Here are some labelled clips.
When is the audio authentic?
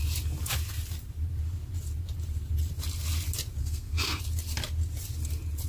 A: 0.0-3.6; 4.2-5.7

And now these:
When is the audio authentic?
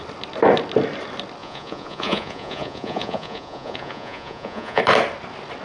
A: 0.0-1.4; 4.8-5.6